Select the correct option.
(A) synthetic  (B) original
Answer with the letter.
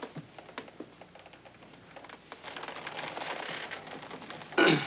B